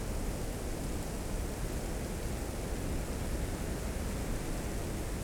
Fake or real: real